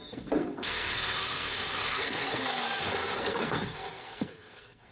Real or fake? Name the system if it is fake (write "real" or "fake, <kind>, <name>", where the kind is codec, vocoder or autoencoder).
fake, codec, SNAC